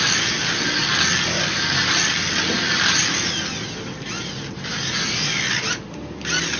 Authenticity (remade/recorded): recorded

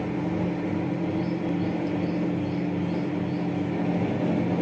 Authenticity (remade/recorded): recorded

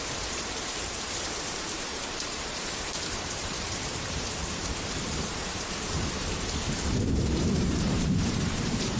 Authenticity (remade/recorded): remade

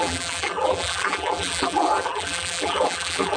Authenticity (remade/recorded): remade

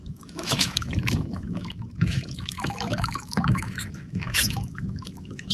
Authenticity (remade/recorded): remade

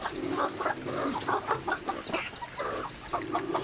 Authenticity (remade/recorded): recorded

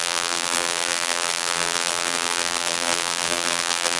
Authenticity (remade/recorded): remade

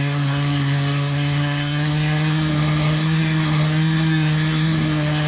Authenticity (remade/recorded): remade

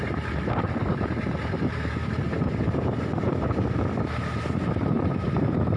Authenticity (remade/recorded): remade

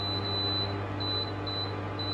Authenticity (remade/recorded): recorded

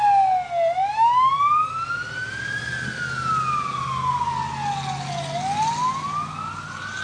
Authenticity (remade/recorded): recorded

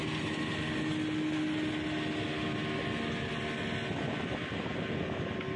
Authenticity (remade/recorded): recorded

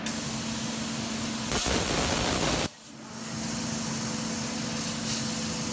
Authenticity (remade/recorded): recorded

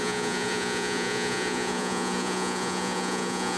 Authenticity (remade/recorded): remade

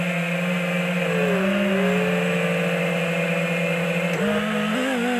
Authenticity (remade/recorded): recorded